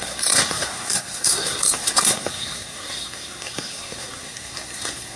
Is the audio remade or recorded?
remade